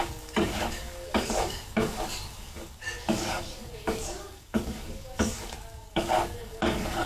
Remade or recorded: remade